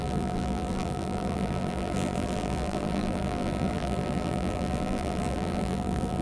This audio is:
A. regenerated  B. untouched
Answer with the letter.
A